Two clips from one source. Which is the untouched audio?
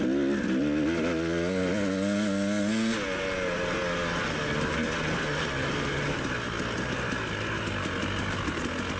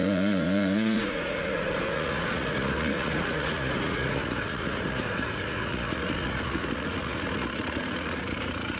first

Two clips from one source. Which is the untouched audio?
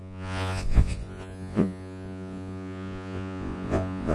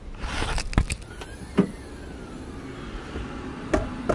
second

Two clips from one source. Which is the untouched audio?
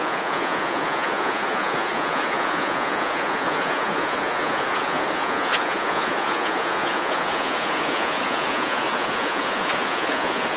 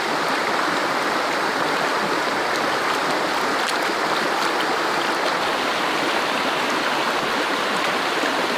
second